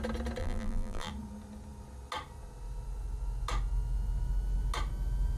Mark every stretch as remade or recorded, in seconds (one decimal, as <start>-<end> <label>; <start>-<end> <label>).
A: 0.0-0.4 recorded; 0.4-1.1 remade; 1.1-5.4 recorded